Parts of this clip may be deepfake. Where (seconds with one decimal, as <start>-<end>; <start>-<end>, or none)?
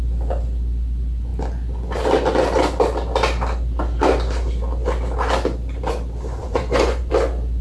6.4-7.1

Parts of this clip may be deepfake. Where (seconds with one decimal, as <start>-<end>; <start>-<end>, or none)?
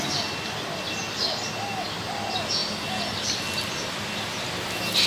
none